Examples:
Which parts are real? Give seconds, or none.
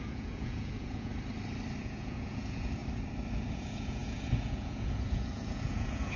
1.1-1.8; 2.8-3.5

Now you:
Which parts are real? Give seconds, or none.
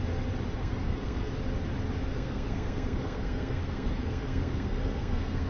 0.0-0.6; 1.3-2.1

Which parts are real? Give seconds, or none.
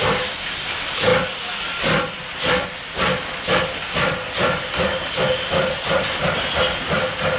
0.0-7.4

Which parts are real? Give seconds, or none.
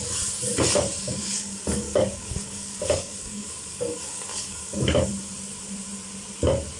0.0-1.0; 5.1-6.8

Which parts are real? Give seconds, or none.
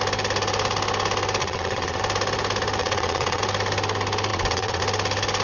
0.0-1.4; 2.0-2.8; 3.4-4.3; 4.8-5.4